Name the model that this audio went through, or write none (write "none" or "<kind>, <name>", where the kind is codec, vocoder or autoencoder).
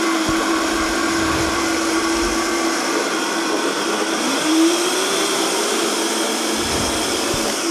vocoder, BigVGAN v2